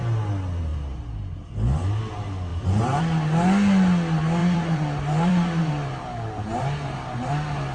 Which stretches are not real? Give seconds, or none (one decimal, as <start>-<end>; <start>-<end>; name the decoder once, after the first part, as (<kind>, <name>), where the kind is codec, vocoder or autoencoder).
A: 2.5-3.0 (vocoder, BigVGAN v2); 4.4-7.3